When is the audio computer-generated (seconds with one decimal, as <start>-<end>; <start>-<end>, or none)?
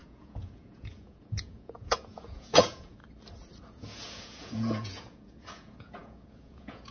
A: 0.0-3.0; 3.7-6.9